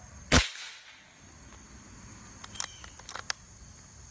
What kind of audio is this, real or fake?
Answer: real